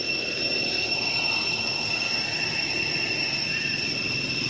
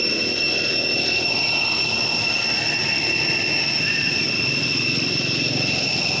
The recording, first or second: second